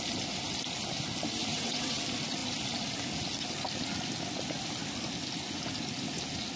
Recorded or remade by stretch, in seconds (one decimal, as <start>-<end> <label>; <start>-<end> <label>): 0.0-1.5 recorded; 1.5-2.0 remade; 2.0-6.6 recorded

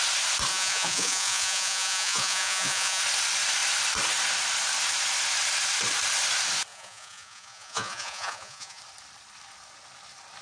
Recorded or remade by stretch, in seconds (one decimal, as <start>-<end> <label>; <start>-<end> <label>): 0.0-0.5 recorded; 0.5-3.0 remade; 3.0-6.7 recorded; 6.7-8.8 remade; 8.8-10.4 recorded

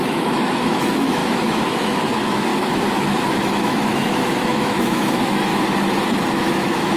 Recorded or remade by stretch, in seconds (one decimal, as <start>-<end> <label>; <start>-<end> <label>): 0.0-5.5 remade; 5.5-6.3 recorded; 6.3-7.0 remade

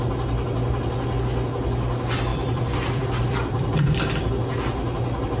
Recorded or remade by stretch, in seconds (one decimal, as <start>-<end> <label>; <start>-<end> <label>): 0.0-2.3 recorded; 2.3-4.3 remade; 4.3-5.4 recorded

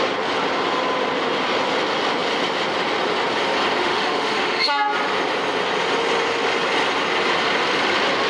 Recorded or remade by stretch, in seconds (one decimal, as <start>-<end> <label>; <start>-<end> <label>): 0.0-3.8 recorded; 3.8-4.7 remade; 4.7-8.3 recorded

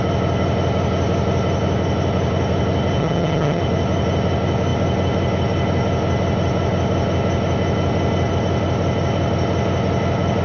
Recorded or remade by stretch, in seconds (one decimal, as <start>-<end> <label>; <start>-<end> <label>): 0.0-3.0 recorded; 3.0-3.6 remade; 3.6-10.4 recorded

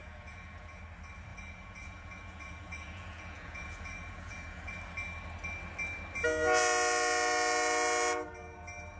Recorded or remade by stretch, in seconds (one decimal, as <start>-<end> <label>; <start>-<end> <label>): 0.0-0.8 remade; 0.8-1.3 recorded; 1.3-4.8 remade; 4.8-9.0 recorded

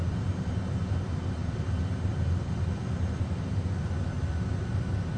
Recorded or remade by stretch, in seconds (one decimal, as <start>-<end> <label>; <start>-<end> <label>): 0.0-5.2 recorded